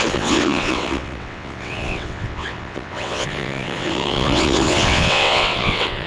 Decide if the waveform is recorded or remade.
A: remade